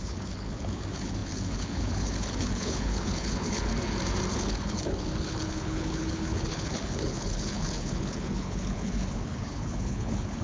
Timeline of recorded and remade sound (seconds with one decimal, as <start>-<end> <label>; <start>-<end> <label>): 0.0-3.7 remade; 3.7-4.3 recorded; 4.3-10.4 remade